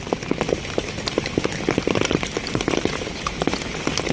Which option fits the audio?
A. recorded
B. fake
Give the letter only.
A